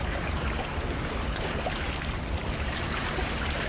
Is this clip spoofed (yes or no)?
yes